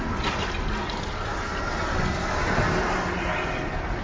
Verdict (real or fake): real